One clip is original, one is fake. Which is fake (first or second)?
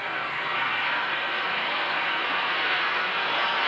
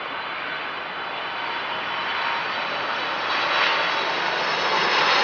first